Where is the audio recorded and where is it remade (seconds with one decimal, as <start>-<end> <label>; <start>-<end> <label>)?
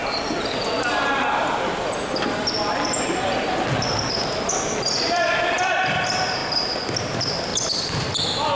0.0-4.8 recorded; 4.8-7.5 remade; 7.5-8.6 recorded